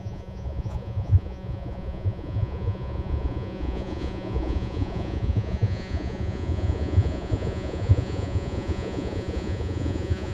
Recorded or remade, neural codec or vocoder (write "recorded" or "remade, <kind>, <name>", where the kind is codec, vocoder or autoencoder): remade, vocoder, Vocos